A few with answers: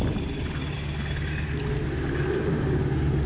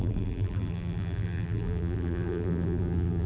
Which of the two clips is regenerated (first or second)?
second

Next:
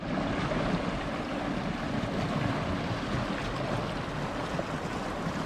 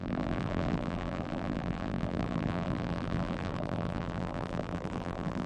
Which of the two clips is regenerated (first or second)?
second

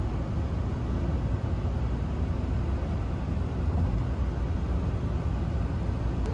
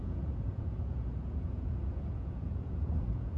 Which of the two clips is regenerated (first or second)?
second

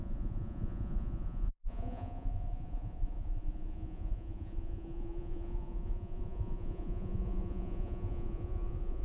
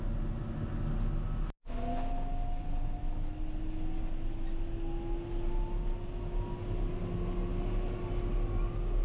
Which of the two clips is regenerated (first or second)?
first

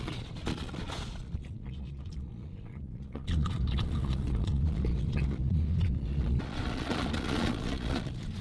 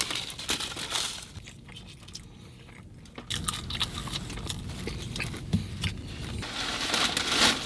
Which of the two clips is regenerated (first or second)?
first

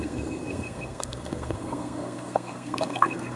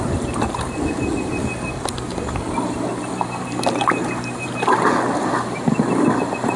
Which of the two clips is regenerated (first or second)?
first